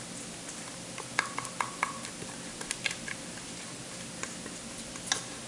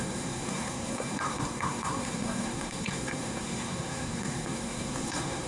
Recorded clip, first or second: first